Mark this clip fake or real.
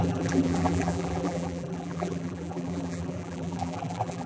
fake